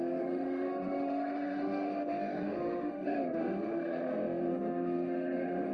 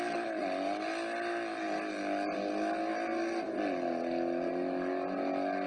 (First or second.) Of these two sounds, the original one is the second